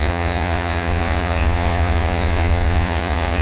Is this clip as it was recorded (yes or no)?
no